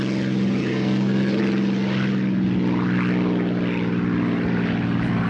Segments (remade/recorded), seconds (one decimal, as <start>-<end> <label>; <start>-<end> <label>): 0.0-0.6 recorded; 0.6-1.4 remade; 1.4-5.3 recorded